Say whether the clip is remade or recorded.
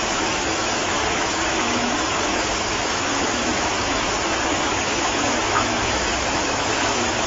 remade